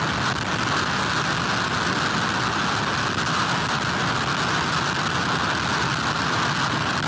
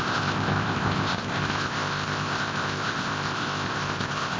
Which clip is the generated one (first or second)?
second